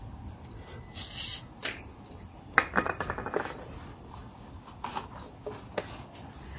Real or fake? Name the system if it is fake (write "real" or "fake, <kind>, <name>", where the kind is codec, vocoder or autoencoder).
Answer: real